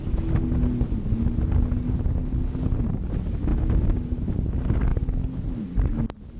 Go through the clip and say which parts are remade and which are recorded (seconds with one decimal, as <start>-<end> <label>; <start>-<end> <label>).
0.0-6.4 recorded